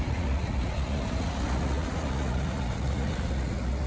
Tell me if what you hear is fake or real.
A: fake